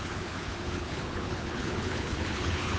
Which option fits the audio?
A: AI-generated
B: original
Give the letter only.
A